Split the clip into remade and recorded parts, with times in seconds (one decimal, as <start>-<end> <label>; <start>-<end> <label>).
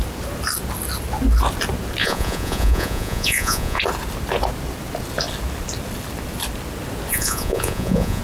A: 0.0-2.0 recorded; 2.0-3.8 remade; 3.8-7.1 recorded; 7.1-8.2 remade